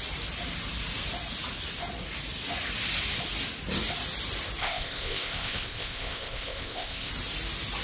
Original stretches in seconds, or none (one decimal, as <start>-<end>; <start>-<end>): 0.0-4.6; 7.1-7.8